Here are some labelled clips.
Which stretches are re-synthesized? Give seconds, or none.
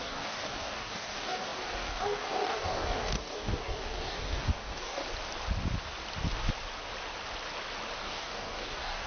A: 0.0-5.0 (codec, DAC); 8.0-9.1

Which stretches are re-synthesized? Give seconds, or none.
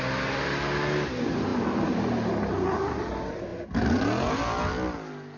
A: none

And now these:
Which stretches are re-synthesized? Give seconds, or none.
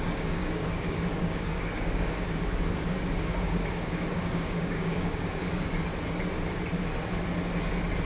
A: 0.0-5.9 (codec, DAC)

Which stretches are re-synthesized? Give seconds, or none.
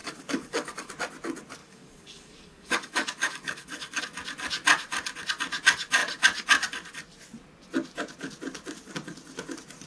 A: 0.0-0.9 (codec, DAC); 1.6-4.0